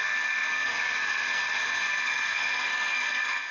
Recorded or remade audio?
remade